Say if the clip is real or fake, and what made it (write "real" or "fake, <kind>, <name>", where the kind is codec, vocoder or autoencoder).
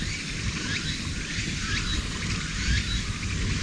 real